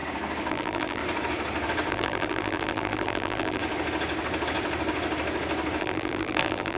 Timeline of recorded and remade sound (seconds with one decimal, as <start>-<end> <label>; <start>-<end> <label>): 0.0-0.5 recorded; 0.5-1.0 remade; 1.0-1.9 recorded; 1.9-3.6 remade; 3.6-5.8 recorded; 5.8-6.8 remade